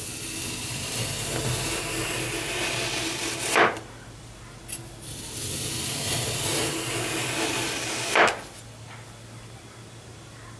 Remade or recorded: recorded